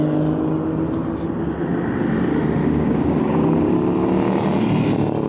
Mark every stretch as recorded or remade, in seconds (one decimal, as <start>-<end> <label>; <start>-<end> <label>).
0.0-2.6 recorded; 2.6-3.7 remade; 3.7-5.3 recorded